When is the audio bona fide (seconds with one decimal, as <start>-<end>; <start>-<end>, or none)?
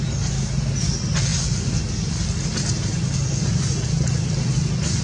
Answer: 0.0-1.3; 1.9-5.0